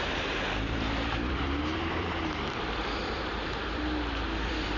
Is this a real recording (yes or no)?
no